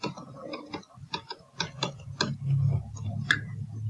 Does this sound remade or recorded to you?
recorded